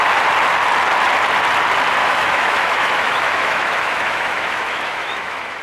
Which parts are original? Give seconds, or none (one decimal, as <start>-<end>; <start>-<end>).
0.0-2.0